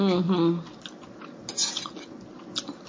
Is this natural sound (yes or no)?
yes